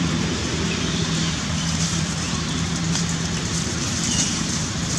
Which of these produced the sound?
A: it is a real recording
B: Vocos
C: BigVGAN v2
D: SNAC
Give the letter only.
C